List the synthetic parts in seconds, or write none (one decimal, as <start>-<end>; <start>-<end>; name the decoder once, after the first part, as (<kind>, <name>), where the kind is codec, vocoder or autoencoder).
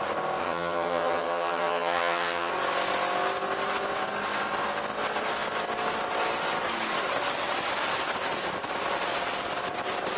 0.4-2.5 (vocoder, HiFi-GAN)